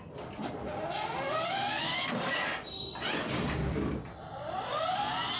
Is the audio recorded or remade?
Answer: recorded